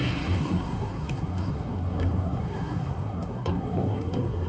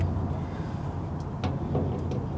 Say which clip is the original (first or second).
second